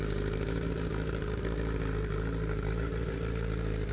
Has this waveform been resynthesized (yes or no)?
yes